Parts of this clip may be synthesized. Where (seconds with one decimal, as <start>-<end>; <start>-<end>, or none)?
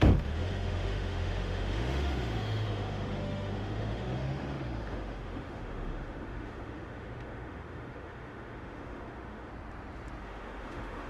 0.0-9.5; 10.2-11.1